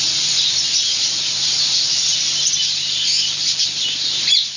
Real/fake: real